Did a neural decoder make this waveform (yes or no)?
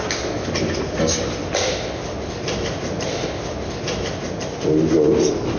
no